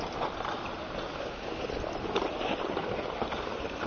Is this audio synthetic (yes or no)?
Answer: no